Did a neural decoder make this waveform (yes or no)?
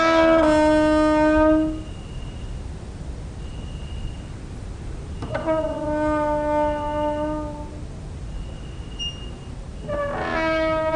no